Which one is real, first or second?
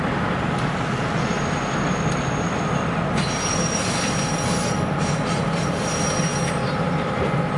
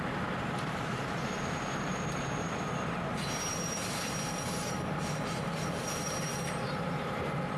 first